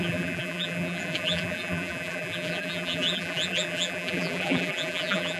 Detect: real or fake fake